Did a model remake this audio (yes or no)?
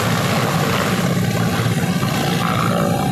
no